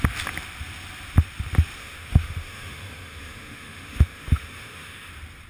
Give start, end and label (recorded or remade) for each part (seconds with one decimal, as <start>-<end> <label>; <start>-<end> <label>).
0.0-1.8 recorded; 1.8-5.1 remade; 5.1-5.5 recorded